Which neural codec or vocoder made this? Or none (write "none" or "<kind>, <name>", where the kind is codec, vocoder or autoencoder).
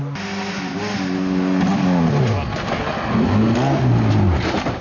none